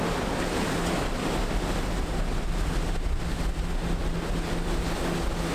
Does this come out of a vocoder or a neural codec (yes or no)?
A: no